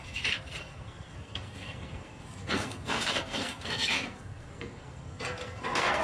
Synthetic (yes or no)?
yes